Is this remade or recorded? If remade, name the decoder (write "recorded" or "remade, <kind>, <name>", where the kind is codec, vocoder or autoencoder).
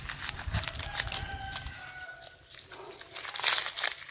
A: recorded